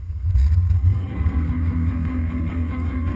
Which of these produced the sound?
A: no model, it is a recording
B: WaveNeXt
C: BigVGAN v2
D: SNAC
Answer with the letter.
D